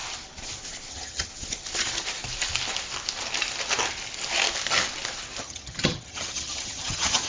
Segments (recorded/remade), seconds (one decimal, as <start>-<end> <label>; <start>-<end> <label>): 0.0-0.9 recorded; 0.9-1.3 remade; 1.3-5.4 recorded; 5.4-7.3 remade